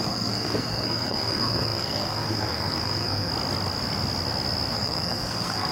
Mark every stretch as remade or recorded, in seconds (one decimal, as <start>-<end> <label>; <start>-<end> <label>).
0.0-3.3 remade; 3.3-4.7 recorded; 4.7-5.7 remade